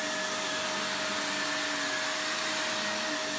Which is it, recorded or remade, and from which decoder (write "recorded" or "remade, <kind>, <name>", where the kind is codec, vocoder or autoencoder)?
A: recorded